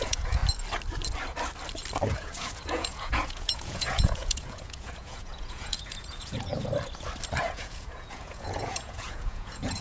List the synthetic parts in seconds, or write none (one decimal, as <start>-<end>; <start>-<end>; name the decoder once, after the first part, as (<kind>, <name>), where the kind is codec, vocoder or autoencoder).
0.0-0.4 (vocoder, Vocos); 2.1-6.5; 7.4-9.8